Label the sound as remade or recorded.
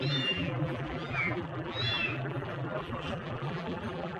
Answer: remade